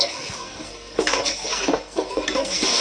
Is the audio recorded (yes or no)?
no